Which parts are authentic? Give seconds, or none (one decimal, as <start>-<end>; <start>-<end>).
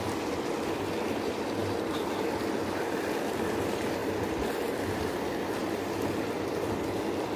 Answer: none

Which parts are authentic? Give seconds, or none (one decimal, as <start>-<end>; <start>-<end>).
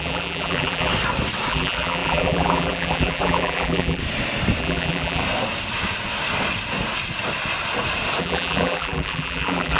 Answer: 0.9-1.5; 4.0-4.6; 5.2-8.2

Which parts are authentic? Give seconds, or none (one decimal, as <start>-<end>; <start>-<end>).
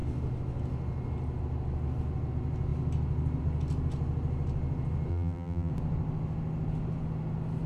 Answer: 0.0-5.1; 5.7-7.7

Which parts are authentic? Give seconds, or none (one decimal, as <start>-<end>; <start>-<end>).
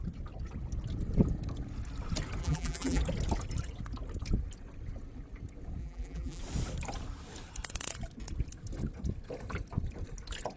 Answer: 0.0-2.4; 3.0-5.8; 6.4-10.6